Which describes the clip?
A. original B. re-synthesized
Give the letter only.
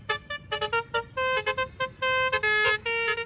A